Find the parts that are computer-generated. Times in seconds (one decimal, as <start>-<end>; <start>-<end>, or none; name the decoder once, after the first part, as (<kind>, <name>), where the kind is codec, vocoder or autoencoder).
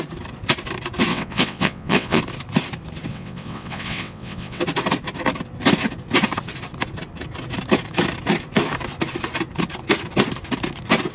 1.1-2.2 (vocoder, WaveNeXt); 3.1-4.6